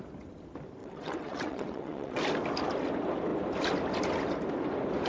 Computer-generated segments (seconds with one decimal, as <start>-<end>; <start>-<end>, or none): 0.8-2.2